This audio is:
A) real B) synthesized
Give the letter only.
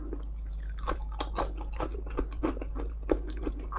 A